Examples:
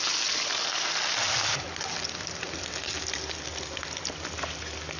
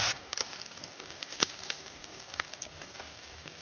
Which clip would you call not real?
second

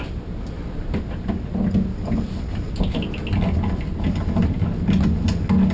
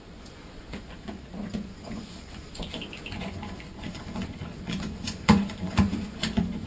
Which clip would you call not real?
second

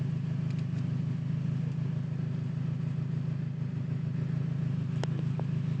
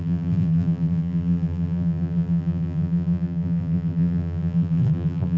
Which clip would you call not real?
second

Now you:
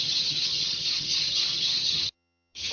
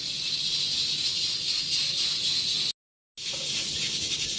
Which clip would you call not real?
first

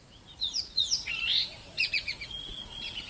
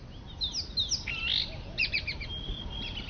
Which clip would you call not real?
first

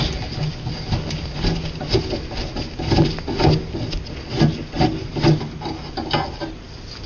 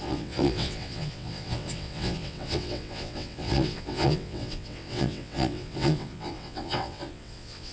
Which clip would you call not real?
second